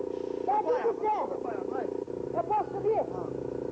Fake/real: real